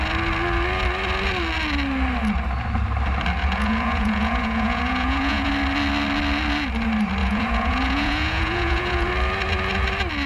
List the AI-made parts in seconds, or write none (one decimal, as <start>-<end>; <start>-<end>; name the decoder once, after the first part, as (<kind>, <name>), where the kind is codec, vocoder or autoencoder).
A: 3.4-5.5 (vocoder, Vocos); 7.2-9.1